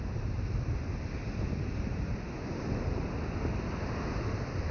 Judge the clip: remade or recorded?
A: recorded